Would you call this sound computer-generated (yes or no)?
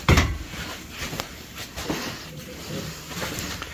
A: no